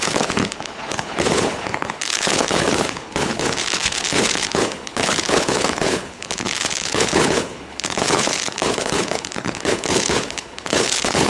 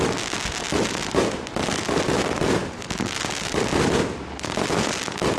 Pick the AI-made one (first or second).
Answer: first